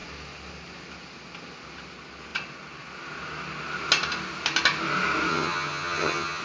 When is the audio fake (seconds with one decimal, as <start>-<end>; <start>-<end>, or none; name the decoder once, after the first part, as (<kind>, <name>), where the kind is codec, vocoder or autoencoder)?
5.3-6.4 (vocoder, HiFi-GAN)